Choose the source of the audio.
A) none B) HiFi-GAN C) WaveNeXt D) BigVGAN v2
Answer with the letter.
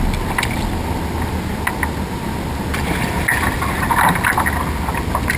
A